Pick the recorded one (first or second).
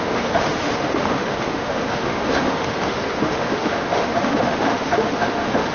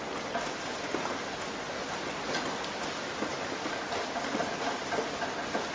second